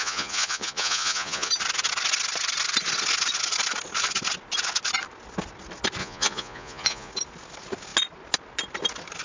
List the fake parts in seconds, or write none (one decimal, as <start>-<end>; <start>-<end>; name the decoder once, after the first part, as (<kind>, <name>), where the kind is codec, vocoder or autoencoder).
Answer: 0.0-1.5 (vocoder, Vocos); 6.0-7.1